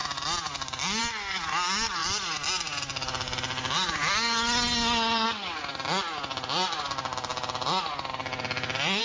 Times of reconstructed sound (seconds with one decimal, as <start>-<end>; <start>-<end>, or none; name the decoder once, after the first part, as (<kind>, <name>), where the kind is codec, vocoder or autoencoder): none